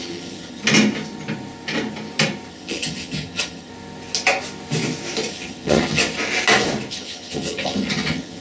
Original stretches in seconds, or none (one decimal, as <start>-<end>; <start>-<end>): 0.6-2.5; 3.7-5.3; 6.0-6.9